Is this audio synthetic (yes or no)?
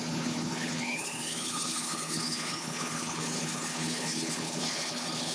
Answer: yes